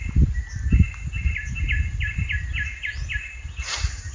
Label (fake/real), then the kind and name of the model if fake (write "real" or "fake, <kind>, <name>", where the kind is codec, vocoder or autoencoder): real